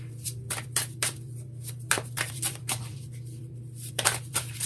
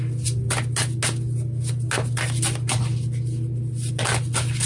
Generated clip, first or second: first